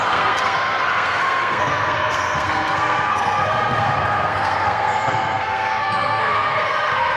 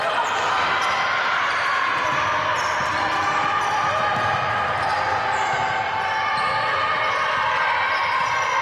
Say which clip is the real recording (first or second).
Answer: second